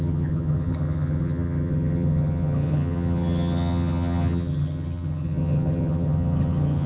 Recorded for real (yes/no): no